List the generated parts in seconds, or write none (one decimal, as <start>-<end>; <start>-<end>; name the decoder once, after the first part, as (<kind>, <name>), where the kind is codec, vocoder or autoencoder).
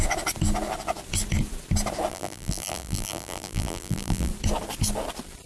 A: 2.1-4.3 (vocoder, BigVGAN v2)